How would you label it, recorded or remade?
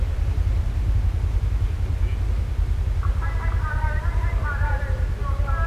recorded